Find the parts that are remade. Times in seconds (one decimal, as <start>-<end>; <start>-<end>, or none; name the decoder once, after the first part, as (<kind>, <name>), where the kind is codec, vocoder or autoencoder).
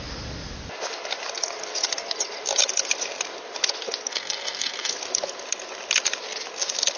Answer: 4.1-4.9 (codec, SNAC)